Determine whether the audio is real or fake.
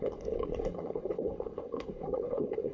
fake